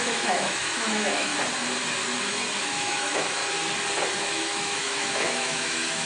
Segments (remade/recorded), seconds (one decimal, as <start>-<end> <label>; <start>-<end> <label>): 0.0-1.3 remade; 1.3-2.6 recorded; 2.6-3.4 remade; 3.4-4.2 recorded; 4.2-6.1 remade